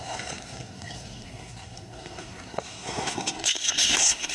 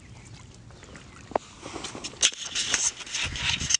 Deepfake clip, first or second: first